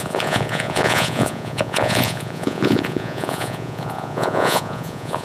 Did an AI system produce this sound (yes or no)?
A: yes